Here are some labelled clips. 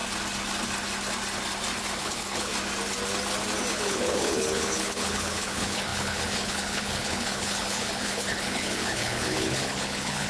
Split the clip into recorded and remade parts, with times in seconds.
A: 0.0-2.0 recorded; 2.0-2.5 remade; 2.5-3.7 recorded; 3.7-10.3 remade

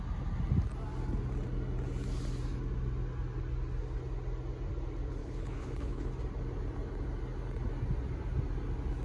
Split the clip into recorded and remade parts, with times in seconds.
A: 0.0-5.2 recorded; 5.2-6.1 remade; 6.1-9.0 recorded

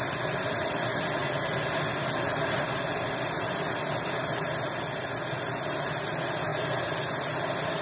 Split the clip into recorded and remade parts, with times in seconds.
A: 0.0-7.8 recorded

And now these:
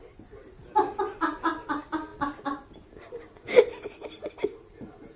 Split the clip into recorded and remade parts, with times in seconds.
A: 0.0-5.2 recorded

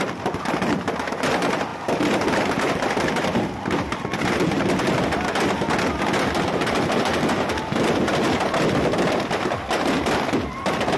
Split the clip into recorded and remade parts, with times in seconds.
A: 0.0-11.0 recorded

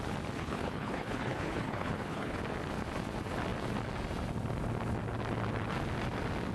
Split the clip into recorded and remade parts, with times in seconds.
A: 0.0-0.4 recorded; 0.4-2.4 remade; 2.4-6.5 recorded

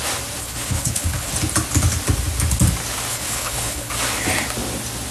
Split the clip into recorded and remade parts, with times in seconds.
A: 0.0-0.4 recorded; 0.4-1.3 remade; 1.3-3.1 recorded; 3.1-3.9 remade; 3.9-5.1 recorded

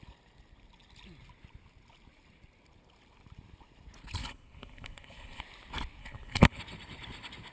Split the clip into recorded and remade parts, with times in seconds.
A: 0.0-4.2 recorded; 4.2-5.4 remade; 5.4-6.0 recorded; 6.0-6.6 remade; 6.6-7.5 recorded